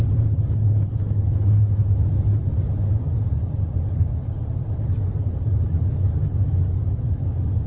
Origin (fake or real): real